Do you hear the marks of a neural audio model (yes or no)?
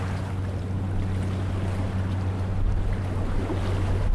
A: no